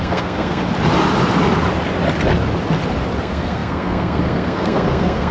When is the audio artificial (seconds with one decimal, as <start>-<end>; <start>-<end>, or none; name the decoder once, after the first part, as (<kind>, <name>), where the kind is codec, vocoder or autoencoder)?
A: 0.0-0.6 (codec, SNAC); 3.2-5.3